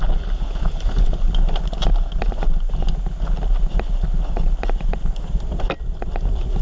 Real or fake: real